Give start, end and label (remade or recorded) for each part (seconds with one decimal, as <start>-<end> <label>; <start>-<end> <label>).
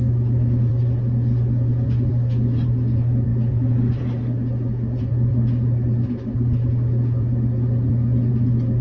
0.0-8.8 recorded